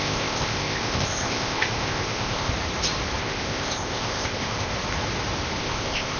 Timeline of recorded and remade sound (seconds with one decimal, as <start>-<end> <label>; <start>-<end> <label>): 0.0-2.5 remade; 2.5-3.2 recorded; 3.2-4.7 remade; 4.7-5.6 recorded; 5.6-6.2 remade